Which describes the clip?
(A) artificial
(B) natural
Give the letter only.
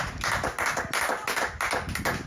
B